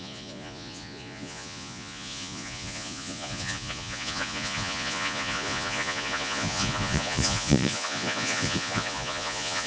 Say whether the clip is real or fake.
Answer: fake